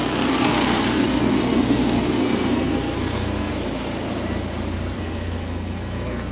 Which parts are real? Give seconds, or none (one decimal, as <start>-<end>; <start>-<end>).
3.5-5.0